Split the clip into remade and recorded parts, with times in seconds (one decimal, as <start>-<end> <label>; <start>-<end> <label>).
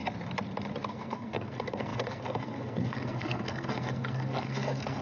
0.0-0.9 recorded; 0.9-5.0 remade